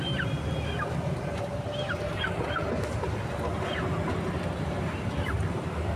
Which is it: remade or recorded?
recorded